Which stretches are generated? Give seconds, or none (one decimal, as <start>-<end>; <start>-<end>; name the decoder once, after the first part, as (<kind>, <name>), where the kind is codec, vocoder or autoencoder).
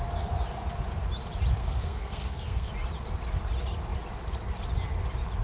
1.6-2.7 (codec, SNAC)